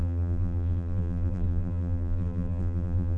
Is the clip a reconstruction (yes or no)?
yes